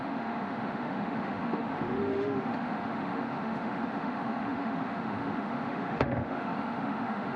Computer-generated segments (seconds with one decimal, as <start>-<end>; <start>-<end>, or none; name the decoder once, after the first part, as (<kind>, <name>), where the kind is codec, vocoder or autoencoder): 0.0-7.4 (autoencoder, DAC-VAE)

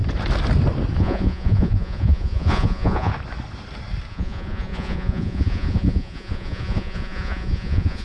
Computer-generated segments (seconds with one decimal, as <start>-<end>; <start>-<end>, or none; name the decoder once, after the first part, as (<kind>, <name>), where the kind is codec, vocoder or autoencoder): 1.0-3.1 (vocoder, Vocos); 4.1-8.0

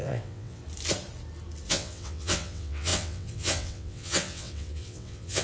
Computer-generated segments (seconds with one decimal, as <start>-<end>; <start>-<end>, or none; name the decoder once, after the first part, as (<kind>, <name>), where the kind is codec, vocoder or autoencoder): 0.0-0.6 (vocoder, WaveNeXt); 1.7-5.4

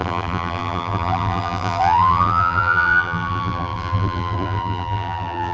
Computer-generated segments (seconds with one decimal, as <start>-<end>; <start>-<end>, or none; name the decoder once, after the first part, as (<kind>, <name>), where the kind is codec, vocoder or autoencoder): 0.0-5.5 (vocoder, BigVGAN v2)

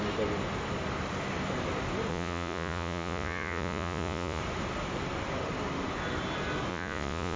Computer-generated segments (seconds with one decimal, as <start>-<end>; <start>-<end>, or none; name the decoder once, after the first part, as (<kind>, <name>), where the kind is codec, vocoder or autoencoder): 2.1-4.4 (vocoder, Vocos); 6.7-7.4

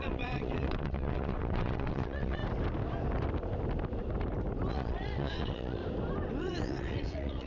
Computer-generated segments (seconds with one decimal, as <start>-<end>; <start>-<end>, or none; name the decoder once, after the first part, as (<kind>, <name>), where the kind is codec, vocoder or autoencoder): 0.0-2.4 (vocoder, WaveNeXt); 4.7-5.8; 6.4-7.5

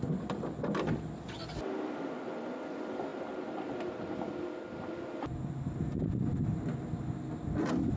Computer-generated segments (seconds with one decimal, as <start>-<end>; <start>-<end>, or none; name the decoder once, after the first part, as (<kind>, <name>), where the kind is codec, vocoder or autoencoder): none

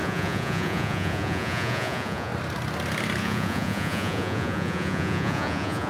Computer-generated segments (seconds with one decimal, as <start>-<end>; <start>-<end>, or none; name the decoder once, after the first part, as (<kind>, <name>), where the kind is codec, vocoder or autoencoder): 0.0-2.3 (vocoder, Vocos); 3.2-5.9